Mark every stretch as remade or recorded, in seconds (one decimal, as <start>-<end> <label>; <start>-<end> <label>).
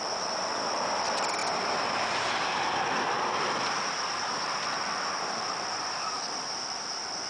0.0-7.3 recorded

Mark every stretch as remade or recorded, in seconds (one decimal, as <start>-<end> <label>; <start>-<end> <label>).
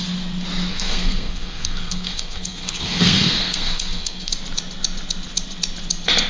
0.0-0.7 recorded; 0.7-4.3 remade; 4.3-6.3 recorded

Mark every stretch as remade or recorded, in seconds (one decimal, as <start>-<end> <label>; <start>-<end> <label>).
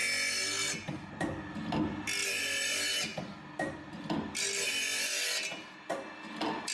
0.0-6.7 recorded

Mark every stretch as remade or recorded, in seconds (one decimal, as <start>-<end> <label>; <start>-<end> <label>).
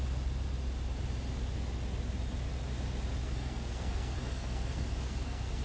0.0-3.2 recorded; 3.2-5.6 remade